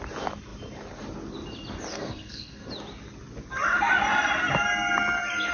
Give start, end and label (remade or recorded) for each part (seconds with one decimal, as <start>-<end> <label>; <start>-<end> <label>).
0.0-1.9 recorded; 1.9-2.7 remade; 2.7-5.5 recorded